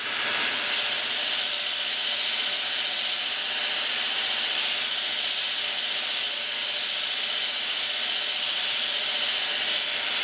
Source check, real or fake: real